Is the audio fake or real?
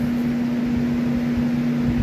real